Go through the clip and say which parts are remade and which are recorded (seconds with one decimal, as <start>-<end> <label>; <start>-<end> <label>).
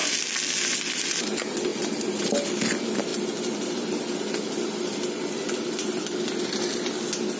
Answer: 0.0-7.4 recorded